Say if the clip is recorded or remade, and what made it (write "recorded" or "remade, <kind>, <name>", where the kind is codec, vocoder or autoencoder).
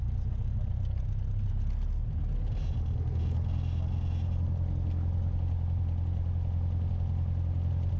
recorded